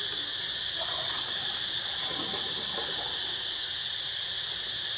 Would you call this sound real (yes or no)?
yes